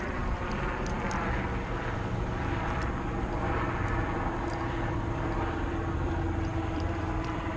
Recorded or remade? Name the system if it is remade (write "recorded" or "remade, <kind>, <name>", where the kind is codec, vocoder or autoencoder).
remade, vocoder, BigVGAN v2